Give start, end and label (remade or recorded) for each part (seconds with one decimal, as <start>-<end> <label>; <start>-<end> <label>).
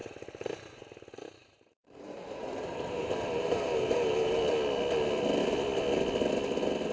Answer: 0.0-0.8 remade; 0.8-1.4 recorded; 1.4-4.4 remade; 4.4-6.9 recorded